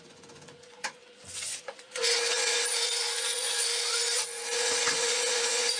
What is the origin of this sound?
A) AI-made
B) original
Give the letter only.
A